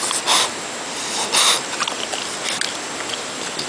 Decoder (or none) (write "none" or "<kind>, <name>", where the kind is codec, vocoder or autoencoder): none